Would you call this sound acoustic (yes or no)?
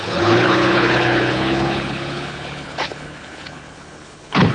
no